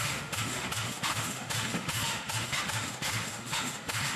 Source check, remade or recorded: remade